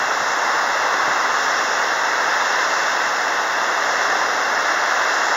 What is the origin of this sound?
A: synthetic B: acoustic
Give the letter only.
B